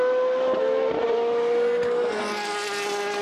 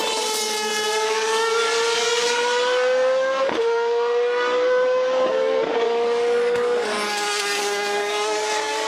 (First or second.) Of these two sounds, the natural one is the first